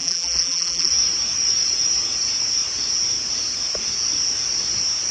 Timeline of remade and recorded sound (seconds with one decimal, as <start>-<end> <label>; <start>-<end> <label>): 0.0-0.9 remade; 0.9-5.1 recorded